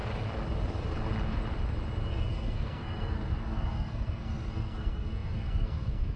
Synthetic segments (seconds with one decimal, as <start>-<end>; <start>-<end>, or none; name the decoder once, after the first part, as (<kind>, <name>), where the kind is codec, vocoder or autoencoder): 2.1-6.2 (codec, SNAC)